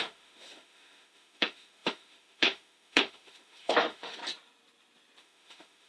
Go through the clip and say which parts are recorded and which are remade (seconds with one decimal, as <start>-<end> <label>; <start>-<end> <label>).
0.0-4.2 remade; 4.2-5.2 recorded; 5.2-5.9 remade